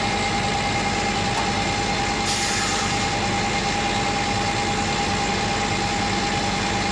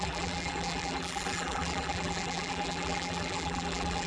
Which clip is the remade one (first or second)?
second